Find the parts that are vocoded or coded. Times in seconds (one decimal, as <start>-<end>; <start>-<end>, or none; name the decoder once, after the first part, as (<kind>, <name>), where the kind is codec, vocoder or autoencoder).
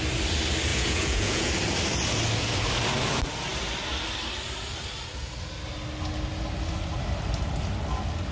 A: 0.7-1.5 (vocoder, Vocos)